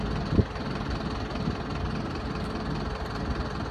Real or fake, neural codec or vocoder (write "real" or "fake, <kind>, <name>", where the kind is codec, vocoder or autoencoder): real